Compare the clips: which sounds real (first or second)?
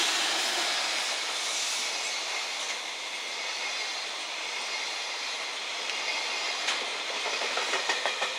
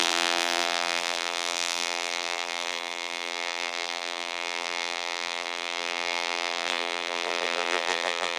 first